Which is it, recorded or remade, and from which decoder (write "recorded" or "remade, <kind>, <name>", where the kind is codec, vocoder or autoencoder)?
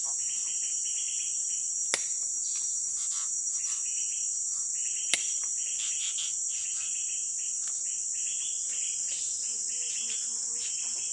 recorded